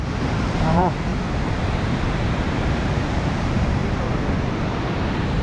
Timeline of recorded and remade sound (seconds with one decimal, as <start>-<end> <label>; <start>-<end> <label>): 0.0-1.1 remade; 1.1-2.0 recorded; 2.0-3.8 remade; 3.8-4.4 recorded; 4.4-5.4 remade